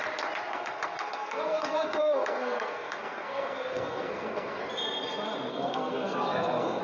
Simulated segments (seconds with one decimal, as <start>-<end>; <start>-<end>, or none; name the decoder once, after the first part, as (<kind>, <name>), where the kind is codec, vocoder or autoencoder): 0.5-4.6 (codec, SNAC); 5.5-6.8